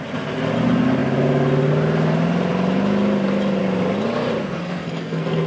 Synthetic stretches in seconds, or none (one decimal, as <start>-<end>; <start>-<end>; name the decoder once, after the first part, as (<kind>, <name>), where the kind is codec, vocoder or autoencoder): 4.4-5.5 (codec, SNAC)